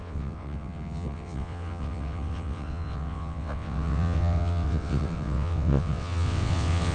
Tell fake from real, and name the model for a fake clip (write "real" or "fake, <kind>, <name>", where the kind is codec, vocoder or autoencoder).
fake, vocoder, WaveNeXt